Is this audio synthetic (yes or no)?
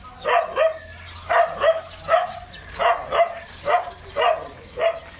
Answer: no